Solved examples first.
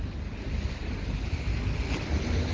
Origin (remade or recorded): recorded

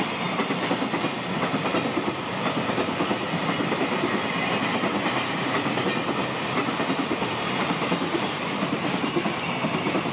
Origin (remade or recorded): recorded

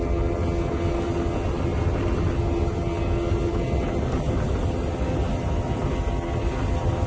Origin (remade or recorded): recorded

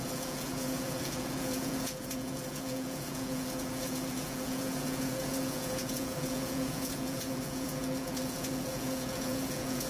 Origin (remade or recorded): remade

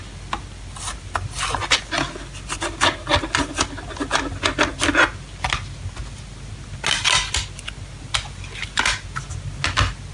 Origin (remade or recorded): recorded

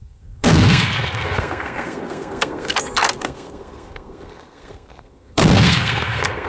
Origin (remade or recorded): remade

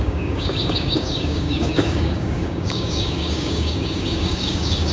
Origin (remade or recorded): remade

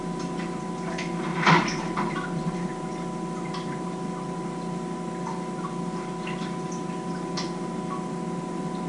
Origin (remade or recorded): recorded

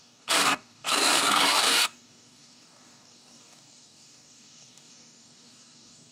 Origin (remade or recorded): remade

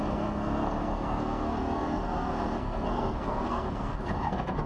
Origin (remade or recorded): remade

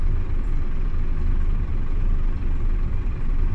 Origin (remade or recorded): remade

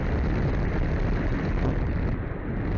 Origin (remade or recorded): recorded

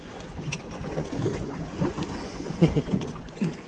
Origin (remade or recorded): remade